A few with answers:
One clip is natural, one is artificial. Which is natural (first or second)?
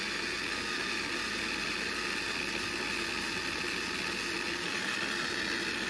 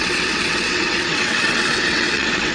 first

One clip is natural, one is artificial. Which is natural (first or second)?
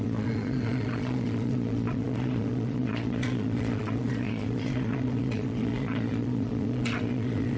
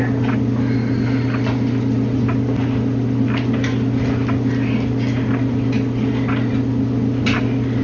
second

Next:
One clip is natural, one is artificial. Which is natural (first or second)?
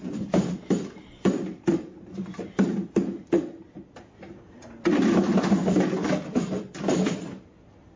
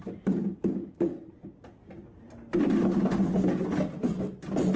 second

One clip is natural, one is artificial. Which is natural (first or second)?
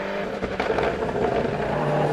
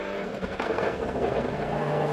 first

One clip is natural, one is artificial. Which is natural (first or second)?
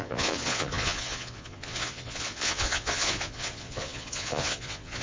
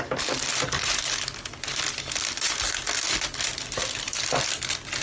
second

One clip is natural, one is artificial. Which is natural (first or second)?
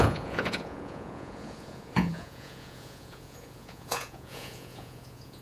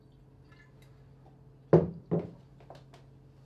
second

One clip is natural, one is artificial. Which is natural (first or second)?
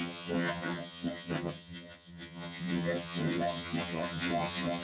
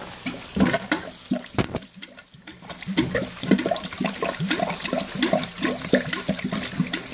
second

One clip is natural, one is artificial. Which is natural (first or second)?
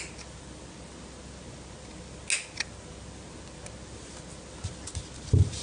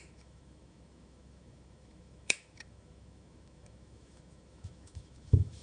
first